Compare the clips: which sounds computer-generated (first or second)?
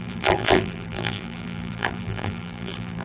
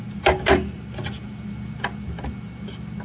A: first